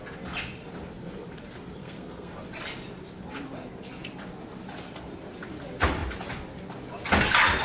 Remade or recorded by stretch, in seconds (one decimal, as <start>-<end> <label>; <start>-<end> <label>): 0.0-1.8 recorded; 1.8-2.3 remade; 2.3-7.6 recorded